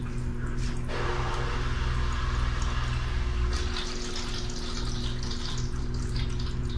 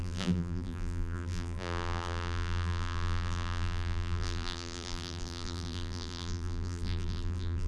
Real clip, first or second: first